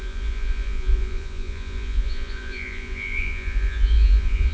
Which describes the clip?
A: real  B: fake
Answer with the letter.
B